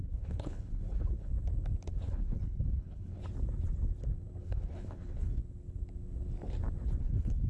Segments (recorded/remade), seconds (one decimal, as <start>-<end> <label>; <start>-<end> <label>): 0.0-1.3 remade; 1.3-1.9 recorded; 1.9-3.2 remade; 3.2-4.4 recorded; 4.4-5.4 remade; 5.4-7.0 recorded; 7.0-7.5 remade